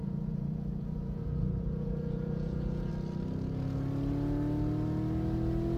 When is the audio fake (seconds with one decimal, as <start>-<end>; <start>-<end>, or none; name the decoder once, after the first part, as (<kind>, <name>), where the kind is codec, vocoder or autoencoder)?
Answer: 0.0-2.9 (vocoder, Vocos)